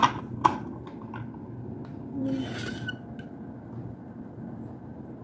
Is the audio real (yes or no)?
yes